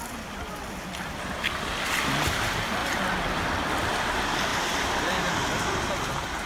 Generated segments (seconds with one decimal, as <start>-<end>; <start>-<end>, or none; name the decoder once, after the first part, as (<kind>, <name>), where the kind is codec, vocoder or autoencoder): 2.8-3.3 (vocoder, BigVGAN v2); 4.5-5.3